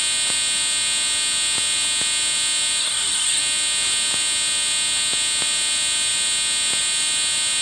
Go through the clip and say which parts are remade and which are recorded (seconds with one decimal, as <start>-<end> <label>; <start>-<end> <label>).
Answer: 0.0-2.8 recorded; 2.8-3.4 remade; 3.4-7.6 recorded